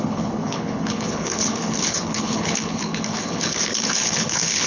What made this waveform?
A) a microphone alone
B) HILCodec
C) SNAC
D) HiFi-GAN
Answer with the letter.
B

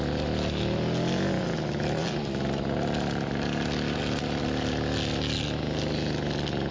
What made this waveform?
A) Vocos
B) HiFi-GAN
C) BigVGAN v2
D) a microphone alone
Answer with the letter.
D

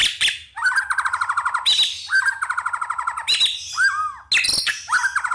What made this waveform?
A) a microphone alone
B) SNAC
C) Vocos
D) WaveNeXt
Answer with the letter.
A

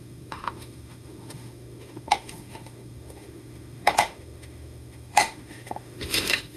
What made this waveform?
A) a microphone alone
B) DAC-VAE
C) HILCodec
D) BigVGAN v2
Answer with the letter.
B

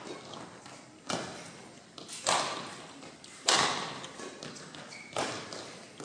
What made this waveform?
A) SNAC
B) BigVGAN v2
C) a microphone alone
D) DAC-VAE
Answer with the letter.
C